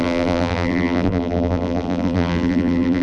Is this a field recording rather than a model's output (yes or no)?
no